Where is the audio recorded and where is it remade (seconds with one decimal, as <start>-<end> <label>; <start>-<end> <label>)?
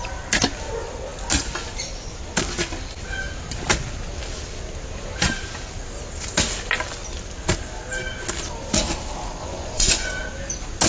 0.0-9.4 recorded; 9.4-10.1 remade; 10.1-10.9 recorded